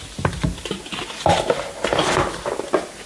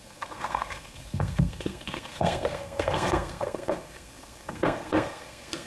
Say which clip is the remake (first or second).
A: second